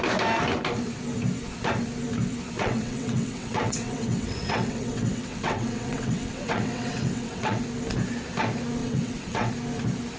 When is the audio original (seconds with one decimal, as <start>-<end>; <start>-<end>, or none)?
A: 0.0-2.6; 7.6-8.8; 9.5-10.2